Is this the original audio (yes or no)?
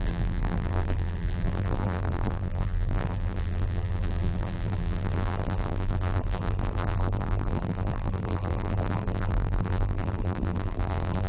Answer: no